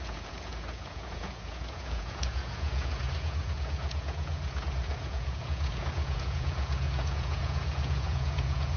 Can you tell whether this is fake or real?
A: fake